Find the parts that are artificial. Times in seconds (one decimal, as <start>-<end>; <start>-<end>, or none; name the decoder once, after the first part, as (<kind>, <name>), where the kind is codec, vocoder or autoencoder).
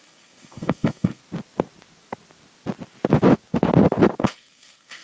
0.0-1.2 (codec, SNAC); 4.2-5.0